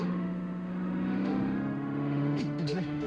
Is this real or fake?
fake